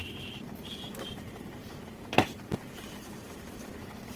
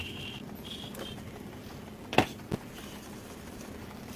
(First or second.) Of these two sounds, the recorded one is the second